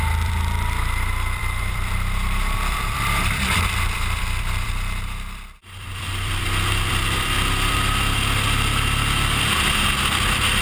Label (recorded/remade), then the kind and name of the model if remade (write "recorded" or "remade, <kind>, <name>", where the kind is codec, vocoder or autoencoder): remade, vocoder, BigVGAN v2